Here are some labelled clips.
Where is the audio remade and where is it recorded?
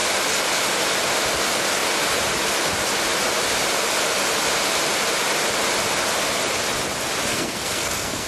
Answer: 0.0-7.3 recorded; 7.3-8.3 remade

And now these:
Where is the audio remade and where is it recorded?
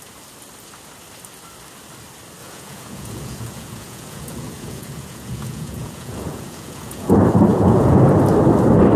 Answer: 0.0-2.4 recorded; 2.4-7.1 remade; 7.1-7.5 recorded; 7.5-8.0 remade; 8.0-9.0 recorded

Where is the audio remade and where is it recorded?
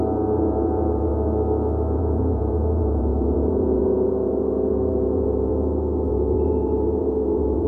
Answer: 0.0-1.1 remade; 1.1-2.0 recorded; 2.0-5.5 remade; 5.5-6.1 recorded; 6.1-7.7 remade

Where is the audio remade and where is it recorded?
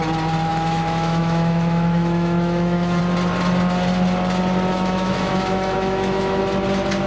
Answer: 0.0-0.5 recorded; 0.5-3.0 remade; 3.0-4.7 recorded; 4.7-6.4 remade; 6.4-7.1 recorded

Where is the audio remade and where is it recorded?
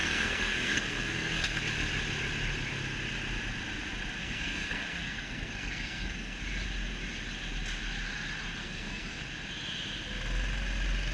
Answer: 0.0-1.6 remade; 1.6-4.2 recorded; 4.2-6.4 remade; 6.4-8.6 recorded; 8.6-9.3 remade; 9.3-11.1 recorded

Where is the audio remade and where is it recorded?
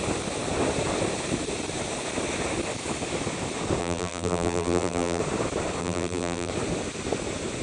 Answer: 0.0-3.8 recorded; 3.8-5.2 remade; 5.2-5.8 recorded; 5.8-6.5 remade; 6.5-7.6 recorded